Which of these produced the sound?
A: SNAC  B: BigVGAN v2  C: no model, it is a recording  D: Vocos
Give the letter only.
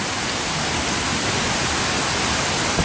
C